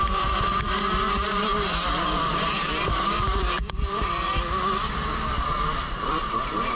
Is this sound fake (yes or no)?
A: yes